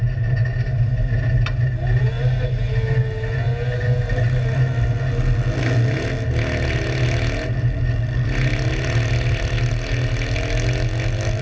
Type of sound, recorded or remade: recorded